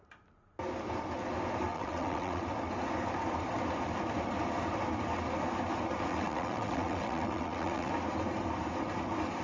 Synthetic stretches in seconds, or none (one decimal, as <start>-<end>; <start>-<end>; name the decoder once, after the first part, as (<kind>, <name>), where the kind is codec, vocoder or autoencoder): 1.7-2.4 (vocoder, WaveNeXt); 6.1-7.9